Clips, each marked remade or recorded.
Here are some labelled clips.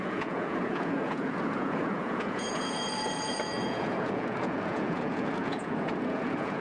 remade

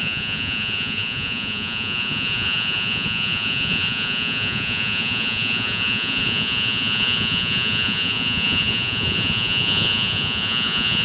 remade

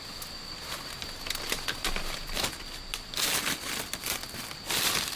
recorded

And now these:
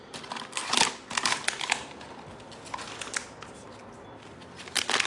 recorded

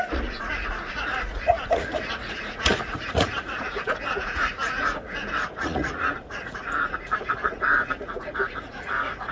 remade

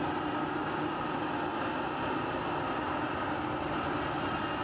recorded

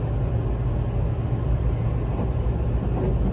recorded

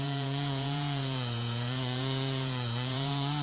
remade